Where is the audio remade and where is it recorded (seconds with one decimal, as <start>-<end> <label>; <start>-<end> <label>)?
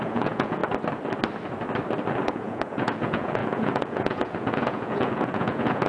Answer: 0.0-0.6 remade; 0.6-2.1 recorded; 2.1-5.9 remade